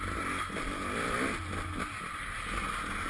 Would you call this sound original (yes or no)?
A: yes